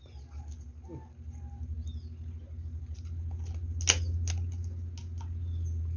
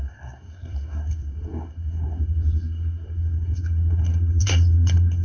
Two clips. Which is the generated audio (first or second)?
second